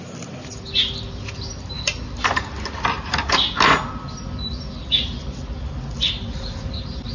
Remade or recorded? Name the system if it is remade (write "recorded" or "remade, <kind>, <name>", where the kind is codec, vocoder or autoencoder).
recorded